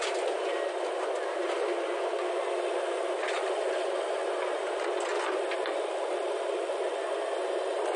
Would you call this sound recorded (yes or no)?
yes